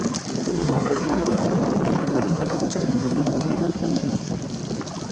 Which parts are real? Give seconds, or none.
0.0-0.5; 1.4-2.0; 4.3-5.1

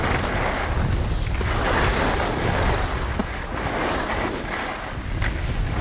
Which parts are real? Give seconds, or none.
0.0-1.9; 2.4-5.8